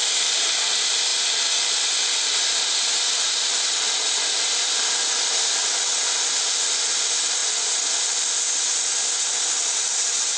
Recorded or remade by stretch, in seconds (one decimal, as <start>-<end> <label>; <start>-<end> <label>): 0.0-0.6 remade; 0.6-10.4 recorded